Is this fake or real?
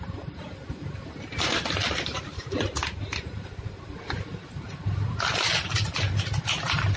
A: real